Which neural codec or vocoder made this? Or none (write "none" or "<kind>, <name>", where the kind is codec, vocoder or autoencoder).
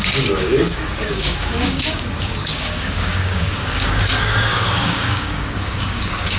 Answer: codec, DAC